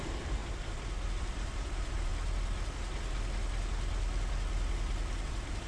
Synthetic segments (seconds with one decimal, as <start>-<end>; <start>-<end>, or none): 0.0-0.4; 1.2-2.1; 5.3-5.7